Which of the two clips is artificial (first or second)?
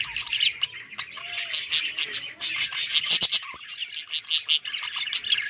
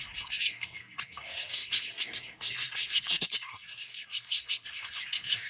second